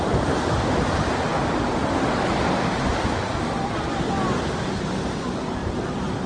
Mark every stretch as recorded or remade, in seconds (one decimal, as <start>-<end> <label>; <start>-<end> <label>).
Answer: 0.0-6.3 recorded